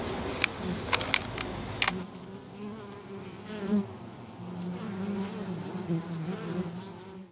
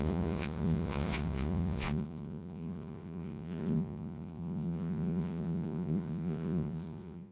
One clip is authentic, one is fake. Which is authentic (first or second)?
first